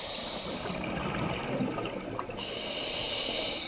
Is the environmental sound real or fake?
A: real